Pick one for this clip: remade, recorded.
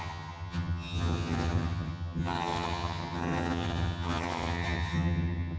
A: remade